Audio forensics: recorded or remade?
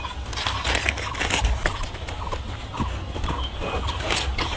recorded